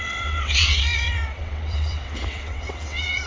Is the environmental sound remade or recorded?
remade